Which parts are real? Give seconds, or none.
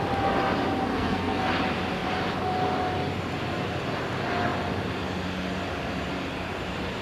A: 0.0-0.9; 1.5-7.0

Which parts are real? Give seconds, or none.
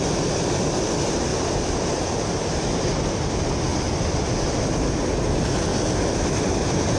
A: 0.0-7.0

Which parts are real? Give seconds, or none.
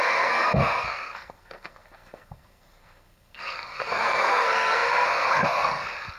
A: none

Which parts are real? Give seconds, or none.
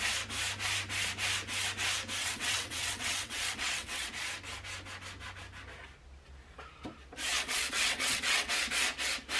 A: 0.0-2.2; 4.1-7.3; 8.5-9.4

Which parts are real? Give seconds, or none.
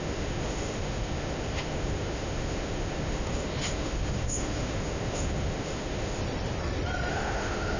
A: 6.2-7.1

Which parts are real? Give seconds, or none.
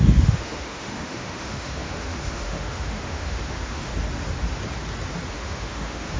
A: 3.9-5.3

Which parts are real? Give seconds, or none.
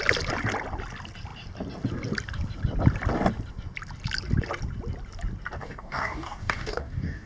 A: 0.0-5.6